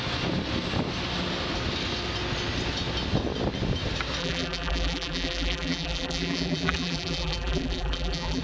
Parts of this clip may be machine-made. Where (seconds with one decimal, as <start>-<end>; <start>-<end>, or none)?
4.2-8.4